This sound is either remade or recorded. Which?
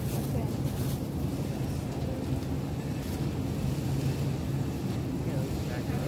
recorded